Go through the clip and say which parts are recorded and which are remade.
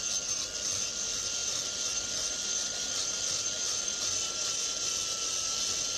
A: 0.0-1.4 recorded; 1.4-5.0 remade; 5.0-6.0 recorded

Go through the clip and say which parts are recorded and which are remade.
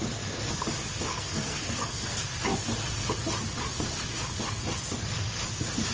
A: 0.0-1.1 recorded; 1.1-2.3 remade; 2.3-5.9 recorded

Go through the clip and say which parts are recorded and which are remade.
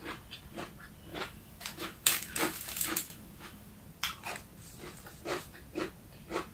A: 0.0-1.1 recorded; 1.1-3.7 remade; 3.7-6.5 recorded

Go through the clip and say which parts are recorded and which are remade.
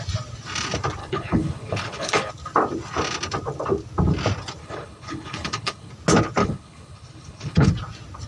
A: 0.0-1.0 recorded; 1.0-2.3 remade; 2.3-4.6 recorded; 4.6-5.9 remade; 5.9-6.4 recorded; 6.4-7.7 remade; 7.7-8.3 recorded